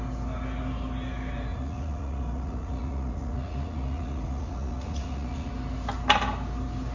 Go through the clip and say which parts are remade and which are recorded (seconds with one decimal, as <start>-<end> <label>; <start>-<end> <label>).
0.0-1.5 recorded; 1.5-5.5 remade; 5.5-6.9 recorded